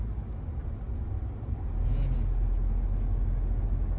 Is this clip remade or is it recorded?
recorded